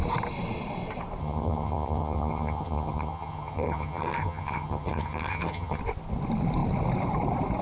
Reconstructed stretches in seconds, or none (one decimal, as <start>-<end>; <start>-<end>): 1.2-5.8